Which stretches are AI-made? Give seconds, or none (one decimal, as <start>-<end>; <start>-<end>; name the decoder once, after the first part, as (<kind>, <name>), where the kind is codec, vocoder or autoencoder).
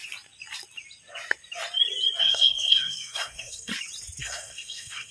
2.2-3.7 (codec, SNAC); 4.2-5.1